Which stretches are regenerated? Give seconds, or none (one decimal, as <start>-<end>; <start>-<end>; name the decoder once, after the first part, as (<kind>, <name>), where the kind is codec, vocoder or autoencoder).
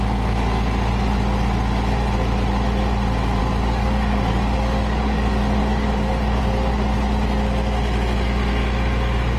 3.4-6.4 (codec, DAC)